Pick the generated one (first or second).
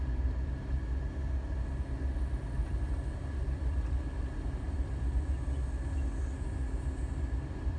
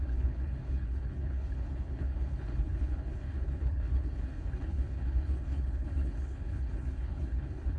second